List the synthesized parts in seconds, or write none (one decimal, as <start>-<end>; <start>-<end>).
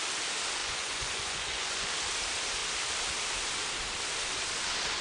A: 0.6-1.9